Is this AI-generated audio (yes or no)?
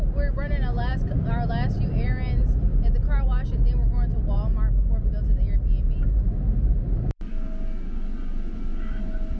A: no